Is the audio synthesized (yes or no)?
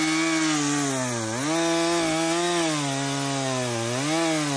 no